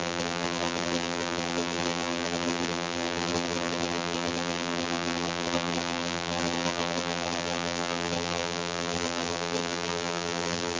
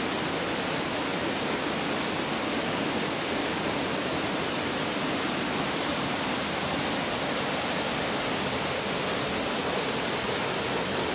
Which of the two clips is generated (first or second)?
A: first